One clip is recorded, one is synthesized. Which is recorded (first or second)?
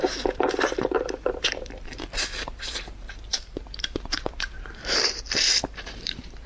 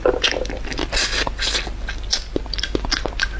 second